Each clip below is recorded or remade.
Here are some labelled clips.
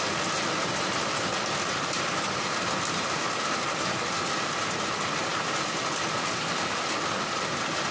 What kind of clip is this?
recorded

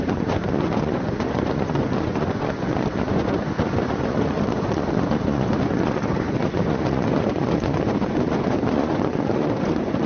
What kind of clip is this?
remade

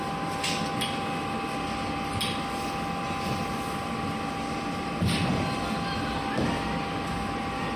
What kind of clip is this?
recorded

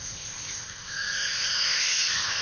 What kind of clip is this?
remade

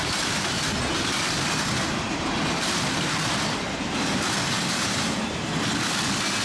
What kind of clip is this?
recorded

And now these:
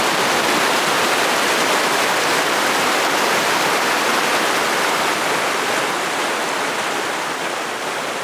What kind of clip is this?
recorded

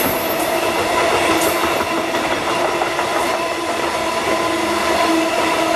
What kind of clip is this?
recorded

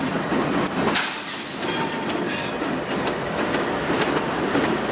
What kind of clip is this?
recorded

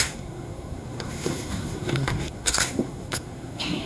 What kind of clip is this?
remade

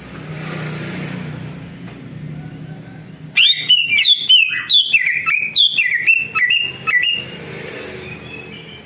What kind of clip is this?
recorded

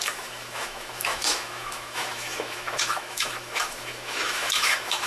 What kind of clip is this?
remade